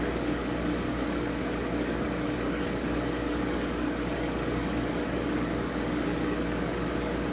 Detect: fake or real fake